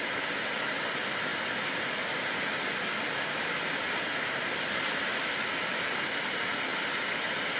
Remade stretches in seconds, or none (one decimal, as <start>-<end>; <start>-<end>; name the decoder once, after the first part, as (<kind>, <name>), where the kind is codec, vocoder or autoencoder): none